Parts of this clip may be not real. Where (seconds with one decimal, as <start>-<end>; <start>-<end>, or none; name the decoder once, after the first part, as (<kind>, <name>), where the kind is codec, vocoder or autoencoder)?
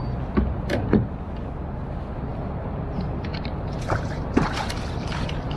2.3-2.8 (vocoder, BigVGAN v2); 3.3-4.6